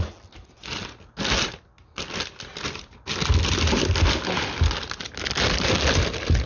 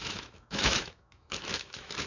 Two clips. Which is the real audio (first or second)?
first